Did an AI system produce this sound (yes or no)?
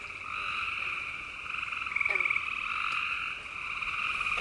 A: no